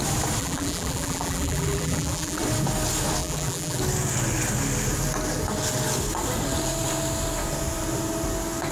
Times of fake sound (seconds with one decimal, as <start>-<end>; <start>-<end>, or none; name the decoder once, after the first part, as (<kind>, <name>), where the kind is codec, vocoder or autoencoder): 0.4-2.4 (vocoder, BigVGAN v2); 3.2-3.8